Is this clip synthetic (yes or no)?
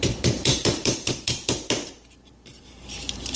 yes